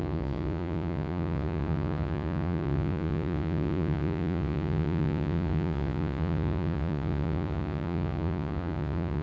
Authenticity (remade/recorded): remade